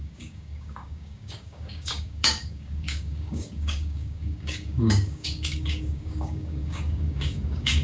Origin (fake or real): fake